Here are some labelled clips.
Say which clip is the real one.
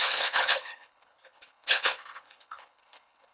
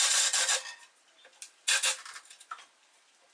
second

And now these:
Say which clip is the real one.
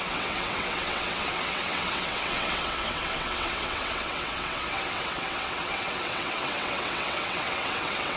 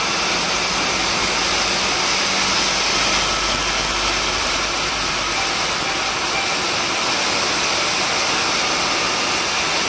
second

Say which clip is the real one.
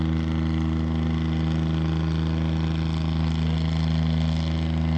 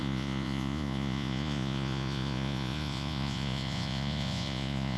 first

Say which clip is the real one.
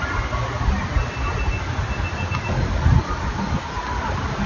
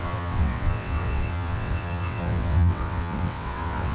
first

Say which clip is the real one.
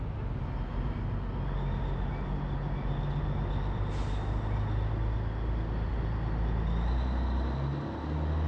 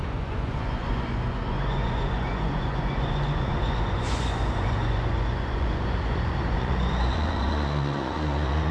first